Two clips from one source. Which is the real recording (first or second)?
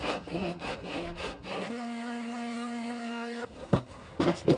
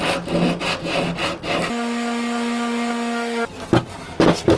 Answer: second